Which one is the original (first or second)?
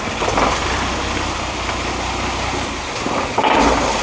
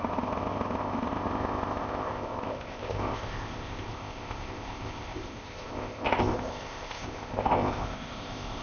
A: first